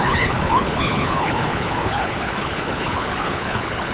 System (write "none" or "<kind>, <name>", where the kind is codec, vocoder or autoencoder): codec, HILCodec